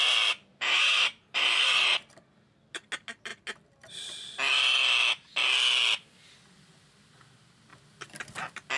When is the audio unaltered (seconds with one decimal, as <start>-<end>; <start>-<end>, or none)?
0.0-0.5; 2.1-8.8